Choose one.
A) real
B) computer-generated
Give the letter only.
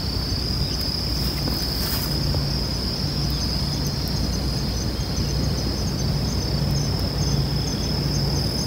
A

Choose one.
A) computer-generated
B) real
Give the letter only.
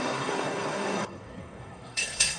A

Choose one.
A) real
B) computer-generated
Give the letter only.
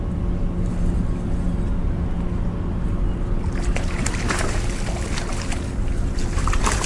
A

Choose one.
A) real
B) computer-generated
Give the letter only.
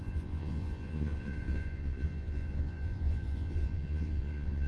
B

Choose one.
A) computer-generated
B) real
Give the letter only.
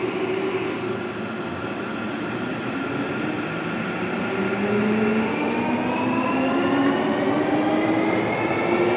B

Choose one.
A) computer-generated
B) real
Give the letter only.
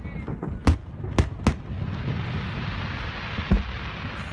B